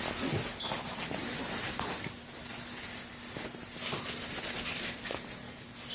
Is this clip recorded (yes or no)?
yes